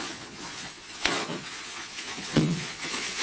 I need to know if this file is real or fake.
fake